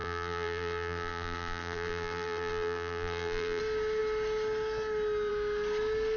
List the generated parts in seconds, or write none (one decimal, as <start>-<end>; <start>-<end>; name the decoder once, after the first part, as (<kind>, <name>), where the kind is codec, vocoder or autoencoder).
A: 0.0-3.6 (vocoder, BigVGAN v2)